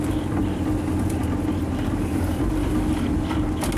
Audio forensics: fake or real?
real